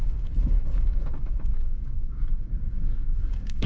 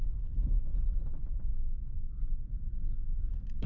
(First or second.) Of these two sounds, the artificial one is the first